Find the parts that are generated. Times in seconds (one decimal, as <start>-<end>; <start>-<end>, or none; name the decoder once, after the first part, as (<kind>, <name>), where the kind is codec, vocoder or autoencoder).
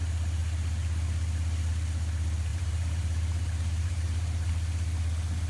2.5-4.5 (vocoder, BigVGAN v2)